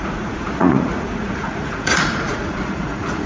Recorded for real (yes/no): no